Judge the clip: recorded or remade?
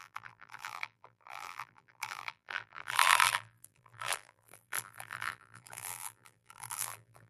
remade